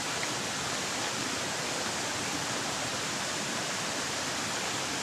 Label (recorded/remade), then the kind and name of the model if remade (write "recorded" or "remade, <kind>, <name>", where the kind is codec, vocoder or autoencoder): remade, vocoder, BigVGAN v2